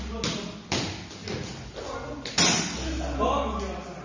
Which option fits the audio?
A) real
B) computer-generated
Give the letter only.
A